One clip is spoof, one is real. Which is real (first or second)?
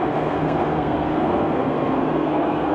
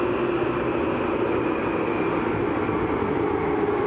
second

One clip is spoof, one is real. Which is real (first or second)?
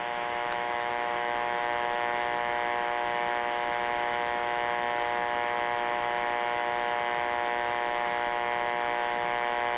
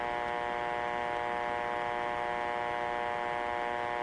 second